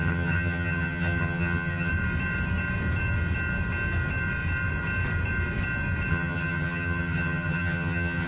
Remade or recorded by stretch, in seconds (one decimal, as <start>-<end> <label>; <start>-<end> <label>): 0.0-1.9 remade; 1.9-6.1 recorded; 6.1-8.3 remade